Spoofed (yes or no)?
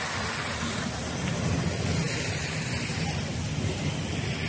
no